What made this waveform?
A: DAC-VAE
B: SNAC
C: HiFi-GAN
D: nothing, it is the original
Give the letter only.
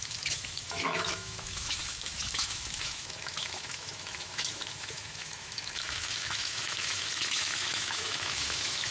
A